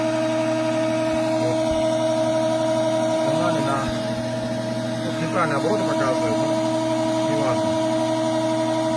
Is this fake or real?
real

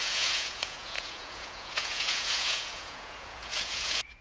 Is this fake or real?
fake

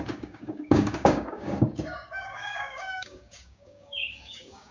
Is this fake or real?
fake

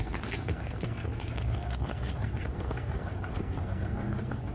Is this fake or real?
fake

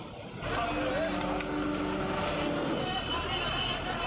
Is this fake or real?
real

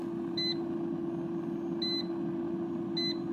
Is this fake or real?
real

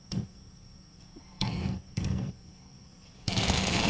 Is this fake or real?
fake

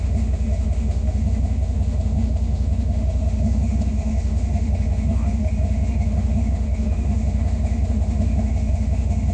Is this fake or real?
fake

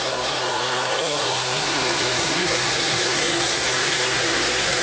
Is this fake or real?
fake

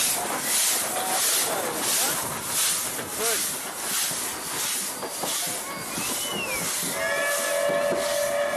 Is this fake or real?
real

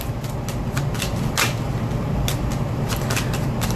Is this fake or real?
real